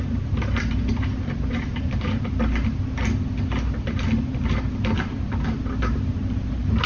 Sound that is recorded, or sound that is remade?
recorded